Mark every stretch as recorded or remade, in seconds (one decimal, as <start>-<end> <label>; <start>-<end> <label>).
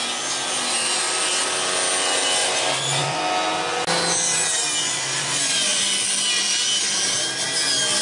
0.0-2.4 recorded; 2.4-3.2 remade; 3.2-4.8 recorded; 4.8-5.8 remade; 5.8-8.0 recorded